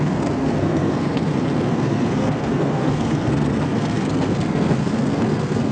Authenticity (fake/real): fake